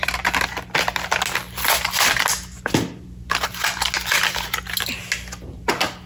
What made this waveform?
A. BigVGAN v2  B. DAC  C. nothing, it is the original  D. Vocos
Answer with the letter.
C